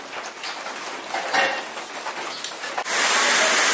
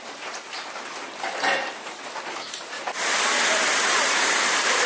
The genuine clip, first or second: first